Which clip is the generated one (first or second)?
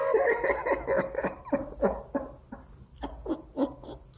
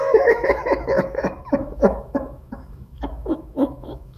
second